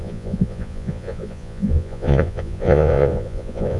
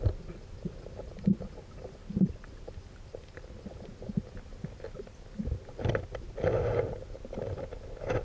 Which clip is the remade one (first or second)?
first